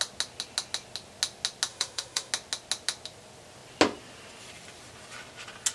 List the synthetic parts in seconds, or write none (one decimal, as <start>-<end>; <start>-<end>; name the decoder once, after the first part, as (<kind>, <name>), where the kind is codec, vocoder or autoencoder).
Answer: 1.7-2.3 (autoencoder, DAC-VAE)